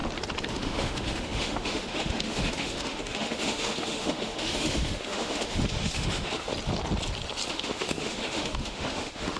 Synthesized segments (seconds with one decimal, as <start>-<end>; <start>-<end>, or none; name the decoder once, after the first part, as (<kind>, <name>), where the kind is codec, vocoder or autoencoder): 0.5-6.5 (autoencoder, DAC-VAE); 7.5-9.4